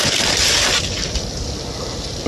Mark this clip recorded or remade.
recorded